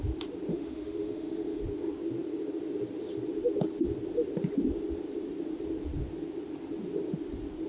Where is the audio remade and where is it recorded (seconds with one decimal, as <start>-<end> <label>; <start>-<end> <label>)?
0.0-0.5 recorded; 0.5-1.6 remade; 1.6-7.7 recorded